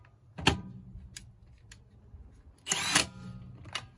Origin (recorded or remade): recorded